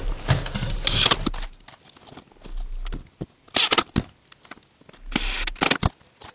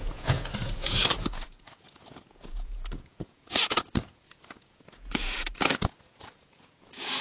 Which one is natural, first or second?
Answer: first